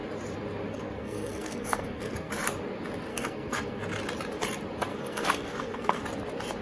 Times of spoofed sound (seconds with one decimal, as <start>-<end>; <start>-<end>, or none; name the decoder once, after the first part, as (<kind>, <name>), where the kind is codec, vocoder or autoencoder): 0.7-2.3 (codec, SNAC); 3.1-3.8; 4.9-6.0